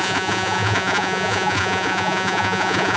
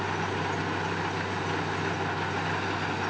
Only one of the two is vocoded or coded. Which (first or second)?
first